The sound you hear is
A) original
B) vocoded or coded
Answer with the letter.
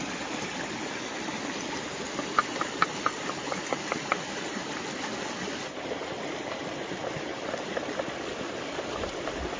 B